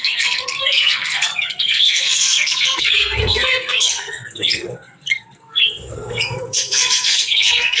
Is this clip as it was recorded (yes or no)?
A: no